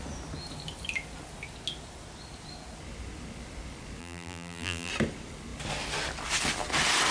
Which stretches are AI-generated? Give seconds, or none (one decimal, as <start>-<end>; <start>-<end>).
4.0-4.9